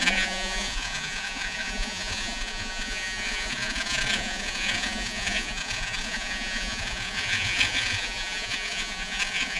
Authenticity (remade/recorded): remade